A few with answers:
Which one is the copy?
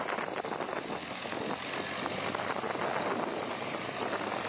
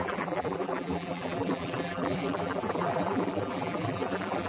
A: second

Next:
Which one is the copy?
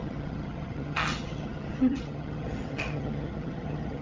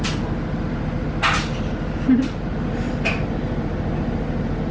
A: first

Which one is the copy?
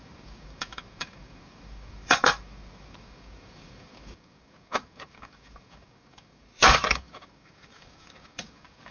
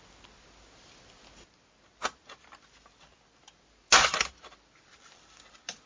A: first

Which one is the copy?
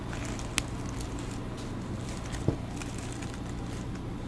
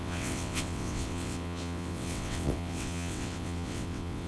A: second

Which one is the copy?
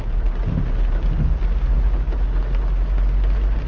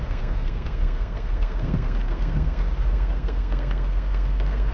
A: second